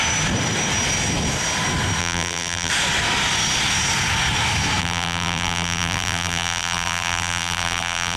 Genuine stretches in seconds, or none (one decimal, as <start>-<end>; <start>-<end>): 0.0-2.0; 2.7-4.8